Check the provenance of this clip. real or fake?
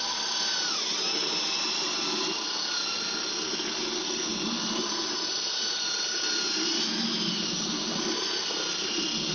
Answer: real